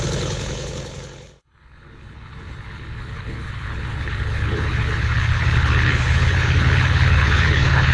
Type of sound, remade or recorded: remade